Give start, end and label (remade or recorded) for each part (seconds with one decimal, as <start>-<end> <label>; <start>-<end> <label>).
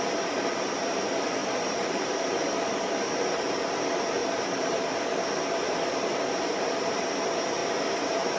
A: 0.0-1.4 recorded; 1.4-2.4 remade; 2.4-4.2 recorded; 4.2-4.9 remade; 4.9-7.6 recorded; 7.6-8.4 remade